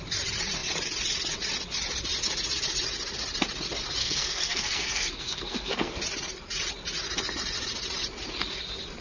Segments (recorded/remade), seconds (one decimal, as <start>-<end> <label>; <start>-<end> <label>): 0.0-4.0 recorded; 4.0-6.0 remade; 6.0-9.0 recorded